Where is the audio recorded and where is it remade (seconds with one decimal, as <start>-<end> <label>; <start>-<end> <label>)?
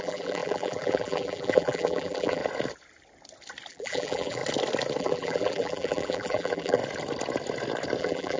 0.0-2.4 remade; 2.4-3.7 recorded; 3.7-4.4 remade; 4.4-5.0 recorded; 5.0-6.8 remade; 6.8-8.0 recorded; 8.0-8.4 remade